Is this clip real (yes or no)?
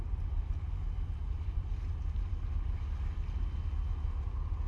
yes